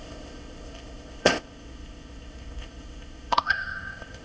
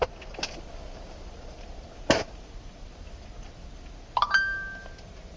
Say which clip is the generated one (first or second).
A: first